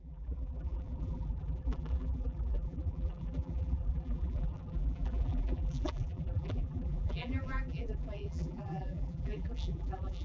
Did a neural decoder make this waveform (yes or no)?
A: yes